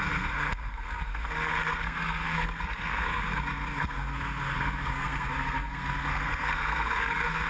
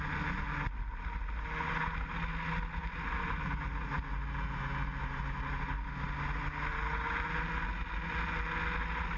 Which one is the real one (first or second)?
second